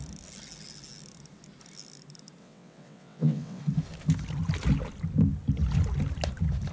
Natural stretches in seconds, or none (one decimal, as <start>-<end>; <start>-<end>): 0.0-2.4; 3.6-6.7